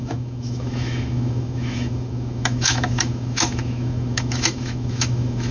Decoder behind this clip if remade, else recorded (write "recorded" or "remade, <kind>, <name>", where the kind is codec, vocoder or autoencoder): remade, autoencoder, DAC-VAE